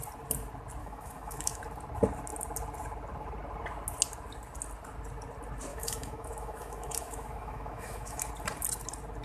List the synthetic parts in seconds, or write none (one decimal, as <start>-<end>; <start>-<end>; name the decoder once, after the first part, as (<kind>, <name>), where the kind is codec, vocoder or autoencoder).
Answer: 0.8-1.6 (autoencoder, DAC-VAE); 5.7-8.3

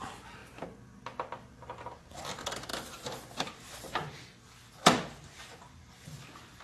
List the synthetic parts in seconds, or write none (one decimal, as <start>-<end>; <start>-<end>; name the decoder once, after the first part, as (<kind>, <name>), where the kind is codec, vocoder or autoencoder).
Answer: none

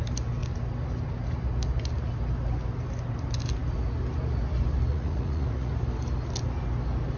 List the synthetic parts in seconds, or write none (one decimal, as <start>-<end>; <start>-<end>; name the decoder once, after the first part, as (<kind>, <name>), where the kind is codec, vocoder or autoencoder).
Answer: 4.9-5.7 (vocoder, Vocos)

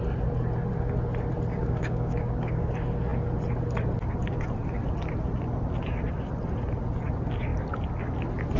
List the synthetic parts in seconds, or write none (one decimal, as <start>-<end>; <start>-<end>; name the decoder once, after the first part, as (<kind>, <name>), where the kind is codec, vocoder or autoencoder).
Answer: 1.5-2.7 (codec, DAC)

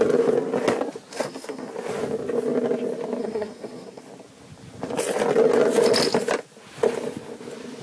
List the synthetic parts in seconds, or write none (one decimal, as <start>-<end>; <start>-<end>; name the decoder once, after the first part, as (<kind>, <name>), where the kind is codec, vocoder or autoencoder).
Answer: 1.1-1.7 (codec, SNAC); 3.2-4.0

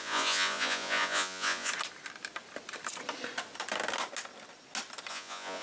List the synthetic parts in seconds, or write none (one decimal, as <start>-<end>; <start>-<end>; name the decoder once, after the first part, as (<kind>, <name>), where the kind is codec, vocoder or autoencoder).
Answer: 0.0-1.7 (vocoder, Vocos); 5.1-5.6

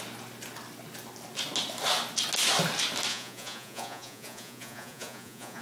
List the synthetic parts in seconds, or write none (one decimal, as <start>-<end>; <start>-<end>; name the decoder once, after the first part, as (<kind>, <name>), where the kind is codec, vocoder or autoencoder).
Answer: 3.1-5.6 (vocoder, Vocos)